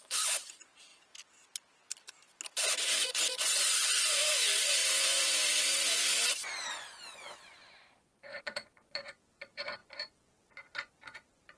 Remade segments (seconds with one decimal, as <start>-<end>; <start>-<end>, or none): 0.0-0.9; 2.8-11.6